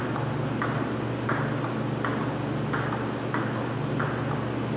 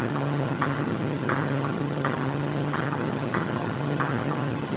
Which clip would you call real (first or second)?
first